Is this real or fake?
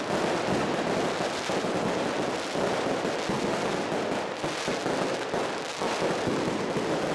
real